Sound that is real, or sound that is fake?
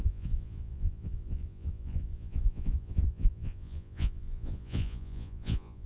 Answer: fake